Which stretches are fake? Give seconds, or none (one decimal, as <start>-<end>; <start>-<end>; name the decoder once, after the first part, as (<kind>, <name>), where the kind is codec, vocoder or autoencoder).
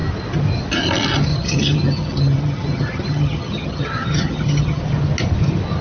1.3-4.8 (vocoder, HiFi-GAN)